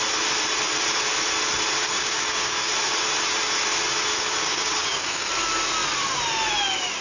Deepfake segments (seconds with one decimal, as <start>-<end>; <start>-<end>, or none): 1.8-2.7; 4.1-5.3